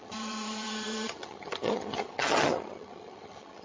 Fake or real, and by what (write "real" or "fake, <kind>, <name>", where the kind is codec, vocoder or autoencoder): fake, vocoder, HiFi-GAN